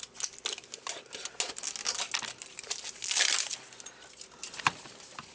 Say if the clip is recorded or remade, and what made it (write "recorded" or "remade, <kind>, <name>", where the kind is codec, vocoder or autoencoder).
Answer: recorded